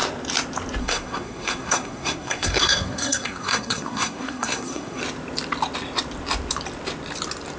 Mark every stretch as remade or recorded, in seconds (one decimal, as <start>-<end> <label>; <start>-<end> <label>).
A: 0.0-0.8 recorded; 0.8-5.0 remade; 5.0-7.6 recorded